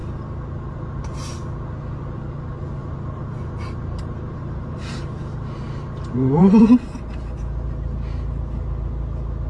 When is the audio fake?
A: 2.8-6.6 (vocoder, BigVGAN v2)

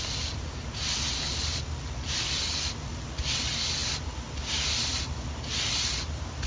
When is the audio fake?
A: none